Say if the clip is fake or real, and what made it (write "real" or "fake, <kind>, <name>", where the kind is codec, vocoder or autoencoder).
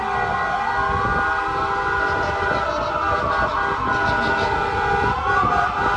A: real